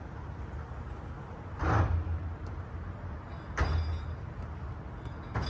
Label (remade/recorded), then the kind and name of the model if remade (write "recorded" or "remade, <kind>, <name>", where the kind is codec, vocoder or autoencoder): recorded